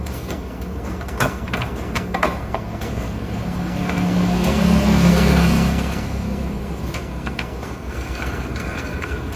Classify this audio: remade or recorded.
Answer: remade